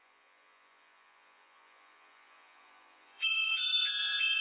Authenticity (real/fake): fake